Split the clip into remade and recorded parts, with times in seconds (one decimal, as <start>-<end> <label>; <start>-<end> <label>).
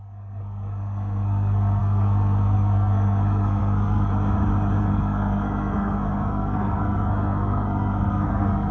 0.0-4.1 remade; 4.1-4.8 recorded; 4.8-8.7 remade